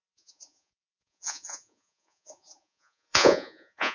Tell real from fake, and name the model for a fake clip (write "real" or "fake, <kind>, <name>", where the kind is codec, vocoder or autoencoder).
fake, vocoder, Vocos